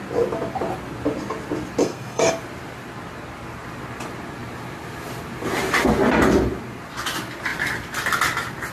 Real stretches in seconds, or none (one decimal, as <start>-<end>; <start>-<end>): 0.0-1.8; 2.3-8.7